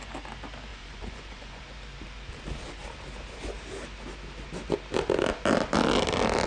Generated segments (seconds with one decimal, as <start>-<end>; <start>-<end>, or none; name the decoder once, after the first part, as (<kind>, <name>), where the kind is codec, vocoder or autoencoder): 0.7-1.6 (vocoder, Vocos)